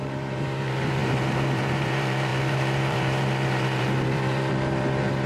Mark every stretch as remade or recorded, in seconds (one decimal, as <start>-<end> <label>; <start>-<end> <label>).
0.0-5.3 remade